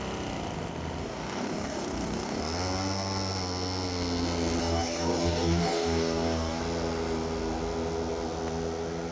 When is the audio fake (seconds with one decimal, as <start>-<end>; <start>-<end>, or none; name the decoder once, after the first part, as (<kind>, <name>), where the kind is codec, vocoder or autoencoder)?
1.0-2.4 (codec, DAC); 4.6-6.6

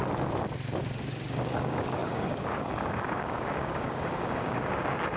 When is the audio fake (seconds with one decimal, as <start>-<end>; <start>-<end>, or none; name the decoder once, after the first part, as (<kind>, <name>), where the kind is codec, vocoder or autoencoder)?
0.8-5.2 (codec, DAC)

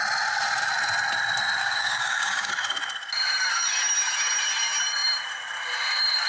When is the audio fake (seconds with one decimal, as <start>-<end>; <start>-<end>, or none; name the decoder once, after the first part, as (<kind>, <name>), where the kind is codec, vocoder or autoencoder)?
1.6-2.5 (codec, DAC)

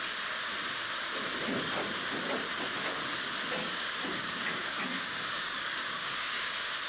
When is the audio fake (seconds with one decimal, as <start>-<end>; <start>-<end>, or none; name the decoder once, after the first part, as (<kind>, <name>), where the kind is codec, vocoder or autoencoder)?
3.6-6.4 (codec, DAC)

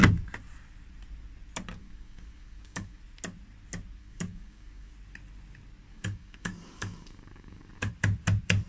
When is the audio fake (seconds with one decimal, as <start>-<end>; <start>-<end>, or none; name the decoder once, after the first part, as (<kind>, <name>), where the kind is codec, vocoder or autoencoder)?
1.8-3.0 (codec, DAC); 4.0-4.9; 5.9-7.9

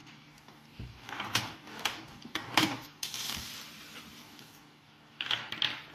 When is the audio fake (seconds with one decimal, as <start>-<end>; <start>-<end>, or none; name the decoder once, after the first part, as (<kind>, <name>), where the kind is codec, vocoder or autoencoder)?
0.0-3.5 (codec, DAC); 4.2-5.5